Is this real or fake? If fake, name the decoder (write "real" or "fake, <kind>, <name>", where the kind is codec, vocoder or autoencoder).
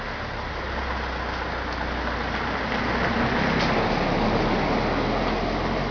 real